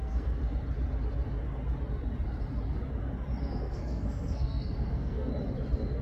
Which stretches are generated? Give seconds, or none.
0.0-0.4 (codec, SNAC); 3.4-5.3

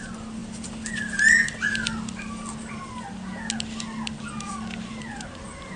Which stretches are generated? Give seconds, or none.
none

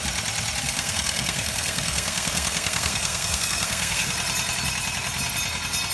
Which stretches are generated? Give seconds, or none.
0.6-4.1 (codec, SNAC)

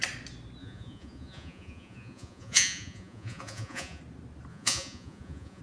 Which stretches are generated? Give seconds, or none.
0.6-4.0 (vocoder, Vocos); 4.5-5.6

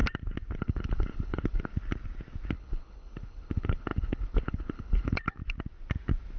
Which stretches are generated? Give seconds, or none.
0.6-1.7 (codec, HILCodec); 2.5-5.4

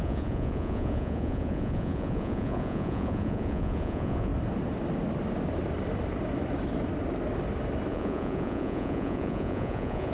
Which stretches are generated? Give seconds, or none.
0.0-4.3 (vocoder, Vocos); 7.9-10.1